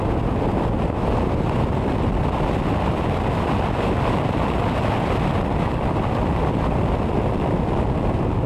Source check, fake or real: real